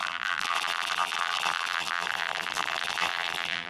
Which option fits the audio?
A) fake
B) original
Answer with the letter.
A